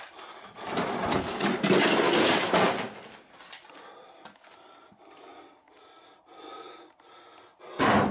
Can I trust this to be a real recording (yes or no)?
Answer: yes